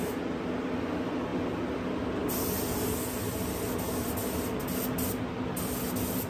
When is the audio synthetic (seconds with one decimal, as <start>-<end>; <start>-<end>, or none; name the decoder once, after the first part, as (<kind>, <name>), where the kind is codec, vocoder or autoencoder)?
none